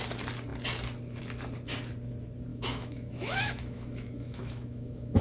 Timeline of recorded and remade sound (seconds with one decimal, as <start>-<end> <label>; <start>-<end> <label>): 0.0-2.5 recorded; 2.5-5.2 remade